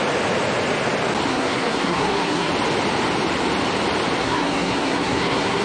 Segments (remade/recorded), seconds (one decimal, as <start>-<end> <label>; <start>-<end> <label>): 0.0-1.3 recorded; 1.3-2.5 remade; 2.5-4.2 recorded; 4.2-5.6 remade